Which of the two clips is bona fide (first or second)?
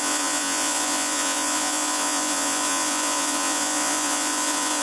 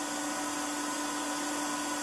second